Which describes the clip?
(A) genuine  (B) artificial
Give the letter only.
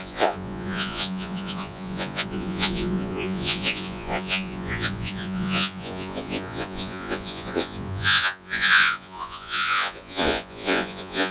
B